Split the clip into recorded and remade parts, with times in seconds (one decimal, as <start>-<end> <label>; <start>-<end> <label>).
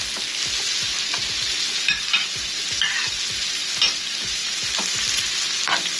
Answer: 0.0-4.4 recorded; 4.4-4.9 remade; 4.9-6.0 recorded